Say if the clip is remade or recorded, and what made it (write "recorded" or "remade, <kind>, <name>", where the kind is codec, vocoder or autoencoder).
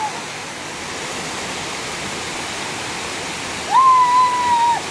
recorded